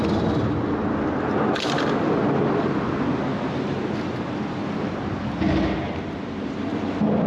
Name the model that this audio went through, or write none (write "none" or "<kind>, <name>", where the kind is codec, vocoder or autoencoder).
none